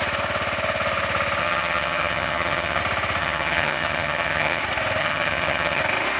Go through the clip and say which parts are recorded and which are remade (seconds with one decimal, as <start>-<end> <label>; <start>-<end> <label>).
0.0-1.4 recorded; 1.4-2.8 remade; 2.8-3.2 recorded; 3.2-4.6 remade; 4.6-5.0 recorded; 5.0-5.8 remade; 5.8-6.2 recorded